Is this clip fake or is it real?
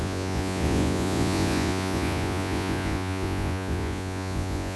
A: fake